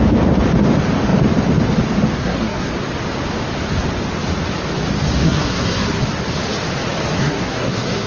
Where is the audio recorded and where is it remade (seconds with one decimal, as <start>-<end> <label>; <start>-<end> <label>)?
0.0-2.2 recorded; 2.2-2.7 remade; 2.7-5.2 recorded; 5.2-6.0 remade; 6.0-7.2 recorded; 7.2-8.1 remade